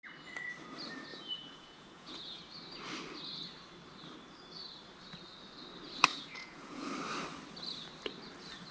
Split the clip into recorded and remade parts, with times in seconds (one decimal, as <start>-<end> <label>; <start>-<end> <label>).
0.0-1.1 recorded; 1.1-2.4 remade; 2.4-6.1 recorded; 6.1-6.9 remade; 6.9-8.7 recorded